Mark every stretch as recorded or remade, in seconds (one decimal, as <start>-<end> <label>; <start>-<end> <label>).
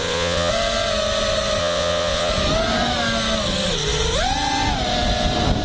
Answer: 0.0-0.5 remade; 0.5-1.6 recorded; 1.6-2.3 remade; 2.3-5.6 recorded